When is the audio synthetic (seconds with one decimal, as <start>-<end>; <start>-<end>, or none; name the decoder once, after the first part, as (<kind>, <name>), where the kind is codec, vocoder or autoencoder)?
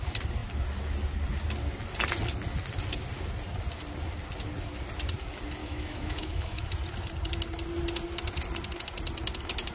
5.6-6.6 (autoencoder, DAC-VAE)